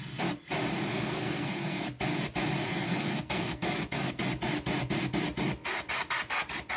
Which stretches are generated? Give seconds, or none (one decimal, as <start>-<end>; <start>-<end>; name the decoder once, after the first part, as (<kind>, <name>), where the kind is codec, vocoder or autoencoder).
0.9-1.8 (codec, SNAC); 2.7-4.2